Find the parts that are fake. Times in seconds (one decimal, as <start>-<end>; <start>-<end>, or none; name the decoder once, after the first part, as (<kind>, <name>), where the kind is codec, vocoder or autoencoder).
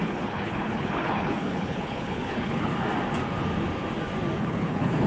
0.0-2.7 (codec, HILCodec); 4.4-5.1